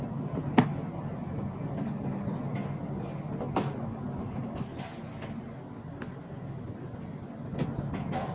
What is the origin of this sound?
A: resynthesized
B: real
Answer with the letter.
B